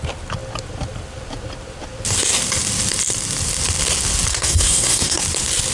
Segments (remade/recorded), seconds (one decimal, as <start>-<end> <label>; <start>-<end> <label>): 0.0-4.3 recorded; 4.3-5.2 remade; 5.2-5.7 recorded